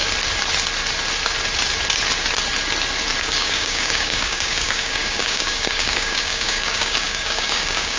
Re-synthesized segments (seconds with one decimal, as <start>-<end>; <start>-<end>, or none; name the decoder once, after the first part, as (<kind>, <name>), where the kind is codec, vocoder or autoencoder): 3.2-8.0 (codec, DAC)

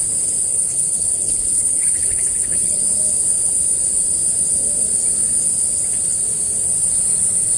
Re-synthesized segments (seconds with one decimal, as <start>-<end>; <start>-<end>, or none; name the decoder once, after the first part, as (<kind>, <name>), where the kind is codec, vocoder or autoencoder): 0.5-2.8 (codec, HILCodec)

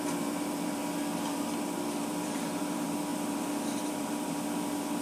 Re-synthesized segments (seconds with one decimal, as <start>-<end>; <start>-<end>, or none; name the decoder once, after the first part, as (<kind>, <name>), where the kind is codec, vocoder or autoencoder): 0.0-0.8 (vocoder, BigVGAN v2); 1.3-5.0

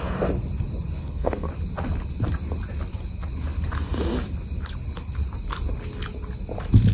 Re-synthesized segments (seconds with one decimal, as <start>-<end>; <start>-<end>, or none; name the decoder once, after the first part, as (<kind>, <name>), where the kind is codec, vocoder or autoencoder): 1.0-1.5 (codec, SNAC)

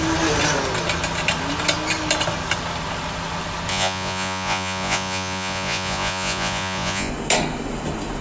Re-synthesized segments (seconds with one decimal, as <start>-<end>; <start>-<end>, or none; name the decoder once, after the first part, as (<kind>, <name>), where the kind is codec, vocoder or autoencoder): 3.7-7.1 (vocoder, Vocos)

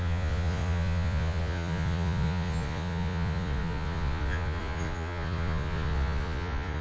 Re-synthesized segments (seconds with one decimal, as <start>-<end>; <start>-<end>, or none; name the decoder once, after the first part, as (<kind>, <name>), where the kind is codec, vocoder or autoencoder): 0.0-6.8 (vocoder, Vocos)

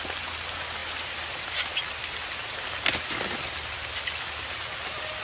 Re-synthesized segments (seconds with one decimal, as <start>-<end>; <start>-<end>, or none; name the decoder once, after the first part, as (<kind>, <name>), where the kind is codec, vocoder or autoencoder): 0.8-2.7 (vocoder, BigVGAN v2)

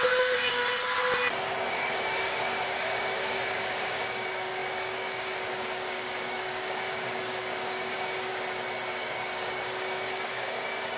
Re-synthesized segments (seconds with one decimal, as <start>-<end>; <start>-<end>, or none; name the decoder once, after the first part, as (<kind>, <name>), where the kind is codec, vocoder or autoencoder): 0.0-0.6 (codec, DAC); 1.7-8.3; 8.9-11.0